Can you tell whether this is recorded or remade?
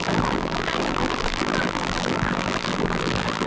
remade